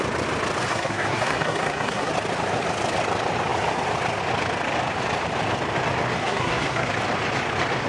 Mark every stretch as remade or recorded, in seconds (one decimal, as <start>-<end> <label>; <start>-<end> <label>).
0.0-0.7 recorded; 0.7-2.1 remade; 2.1-6.2 recorded; 6.2-6.9 remade; 6.9-7.9 recorded